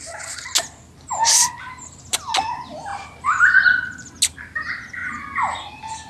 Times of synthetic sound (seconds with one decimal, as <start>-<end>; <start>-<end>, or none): none